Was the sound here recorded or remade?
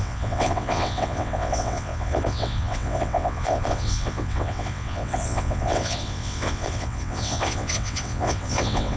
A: remade